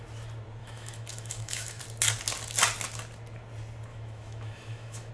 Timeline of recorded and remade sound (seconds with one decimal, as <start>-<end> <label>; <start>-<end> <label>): 0.0-0.6 recorded; 0.6-1.8 remade; 1.8-3.9 recorded; 3.9-5.1 remade